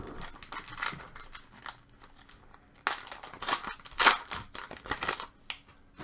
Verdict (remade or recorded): recorded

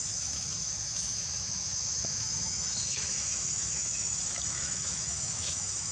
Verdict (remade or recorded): remade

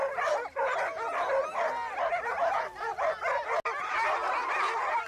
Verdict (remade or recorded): recorded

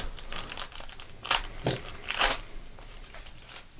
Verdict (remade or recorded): recorded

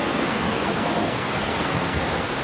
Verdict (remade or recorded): remade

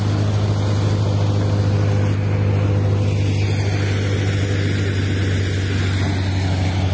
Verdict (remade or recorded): recorded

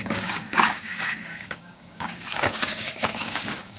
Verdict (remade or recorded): remade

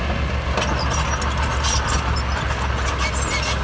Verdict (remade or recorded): recorded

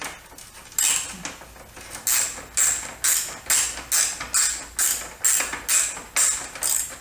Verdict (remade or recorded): recorded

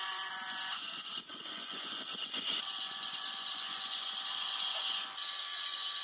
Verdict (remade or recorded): remade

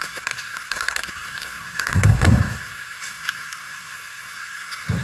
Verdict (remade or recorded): remade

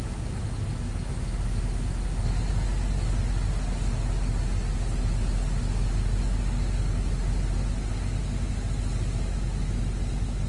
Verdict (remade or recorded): recorded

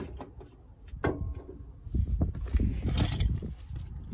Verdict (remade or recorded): recorded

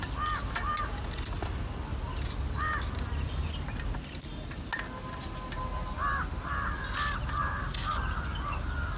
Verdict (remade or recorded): recorded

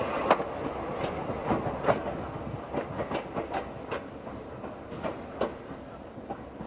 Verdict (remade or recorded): recorded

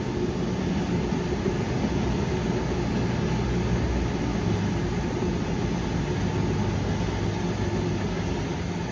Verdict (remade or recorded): recorded